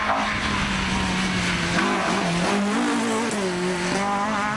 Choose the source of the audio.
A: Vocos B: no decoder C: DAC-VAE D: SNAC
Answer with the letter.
B